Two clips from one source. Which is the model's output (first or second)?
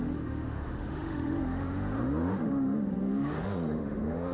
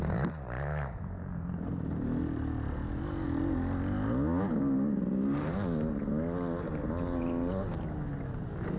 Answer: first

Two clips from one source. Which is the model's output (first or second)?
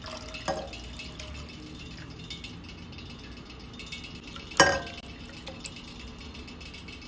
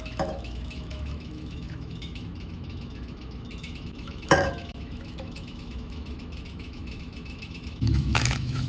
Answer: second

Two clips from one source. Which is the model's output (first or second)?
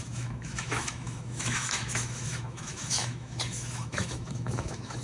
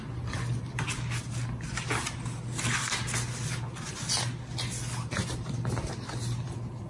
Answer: first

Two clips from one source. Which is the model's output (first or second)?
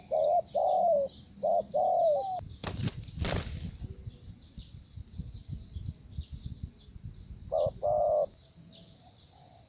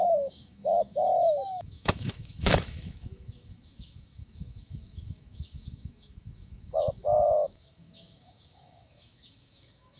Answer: second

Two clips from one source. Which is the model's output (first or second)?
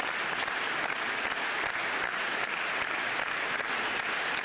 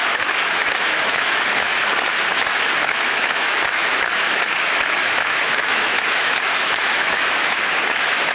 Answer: second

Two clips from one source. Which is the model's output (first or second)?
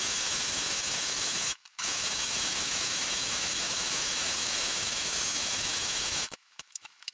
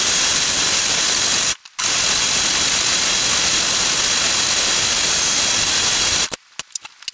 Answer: first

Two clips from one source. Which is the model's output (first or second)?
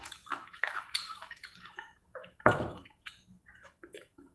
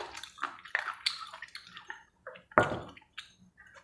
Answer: first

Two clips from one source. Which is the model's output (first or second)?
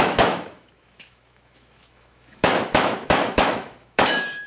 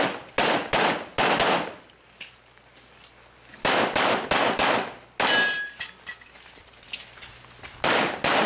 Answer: first